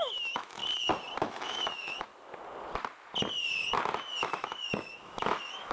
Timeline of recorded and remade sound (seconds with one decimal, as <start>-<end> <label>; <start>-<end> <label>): 0.0-0.6 remade; 0.6-1.2 recorded; 1.2-2.1 remade; 2.1-4.2 recorded; 4.2-5.7 remade